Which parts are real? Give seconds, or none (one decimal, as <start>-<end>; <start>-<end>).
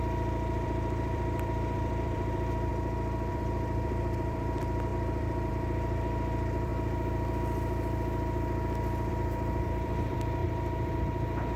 2.7-3.3; 6.7-9.1; 10.4-11.6